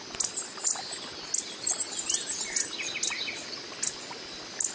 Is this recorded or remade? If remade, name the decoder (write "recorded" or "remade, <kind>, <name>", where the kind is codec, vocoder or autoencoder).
recorded